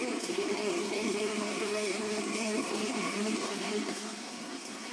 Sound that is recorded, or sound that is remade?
remade